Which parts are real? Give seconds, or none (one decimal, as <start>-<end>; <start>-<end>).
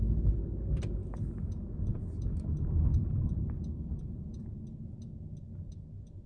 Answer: 0.0-2.9; 4.6-6.3